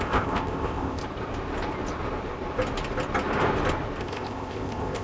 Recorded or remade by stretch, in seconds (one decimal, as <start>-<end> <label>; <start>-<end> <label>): 0.0-1.0 remade; 1.0-4.0 recorded; 4.0-5.0 remade